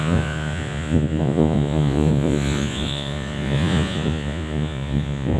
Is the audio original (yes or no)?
no